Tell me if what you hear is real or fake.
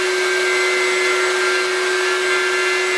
real